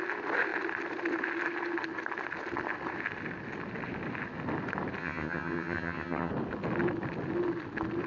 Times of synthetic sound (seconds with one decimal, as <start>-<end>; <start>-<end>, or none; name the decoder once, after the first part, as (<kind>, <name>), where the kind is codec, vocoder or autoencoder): 5.0-6.3 (vocoder, HiFi-GAN)